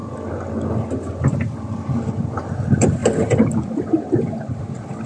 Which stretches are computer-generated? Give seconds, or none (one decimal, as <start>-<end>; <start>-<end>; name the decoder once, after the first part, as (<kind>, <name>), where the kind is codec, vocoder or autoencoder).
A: 2.1-5.1 (vocoder, BigVGAN v2)